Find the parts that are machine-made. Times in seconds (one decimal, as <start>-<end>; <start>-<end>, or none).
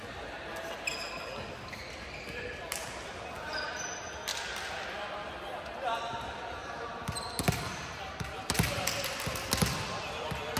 none